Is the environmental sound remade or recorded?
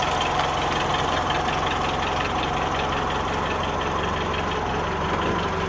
recorded